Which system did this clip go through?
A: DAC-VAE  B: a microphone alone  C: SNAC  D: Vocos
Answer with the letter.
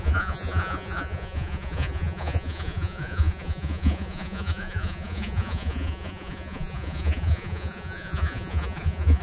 D